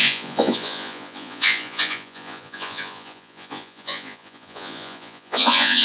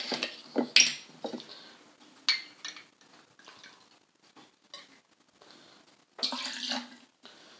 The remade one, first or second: first